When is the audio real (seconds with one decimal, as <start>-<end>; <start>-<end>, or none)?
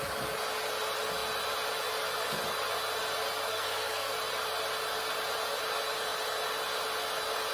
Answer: 0.0-3.5; 4.1-7.5